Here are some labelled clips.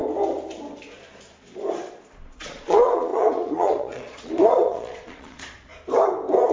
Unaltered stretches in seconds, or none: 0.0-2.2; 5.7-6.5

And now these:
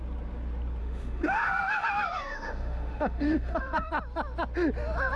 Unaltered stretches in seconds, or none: 0.0-0.8; 3.9-5.2

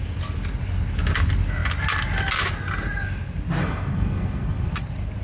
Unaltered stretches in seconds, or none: 0.0-3.6; 4.7-5.2

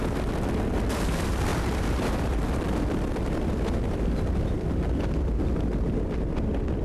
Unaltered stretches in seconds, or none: 0.0-1.5; 5.0-6.8

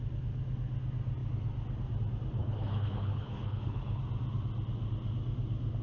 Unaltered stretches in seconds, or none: 0.0-2.4; 4.0-5.8

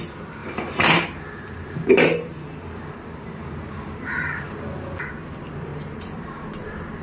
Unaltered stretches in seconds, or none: 0.0-0.4; 4.6-5.7; 6.6-7.0

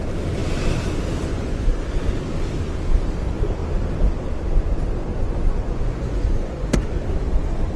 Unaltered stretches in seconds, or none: 0.0-1.3; 1.8-5.1; 6.9-7.8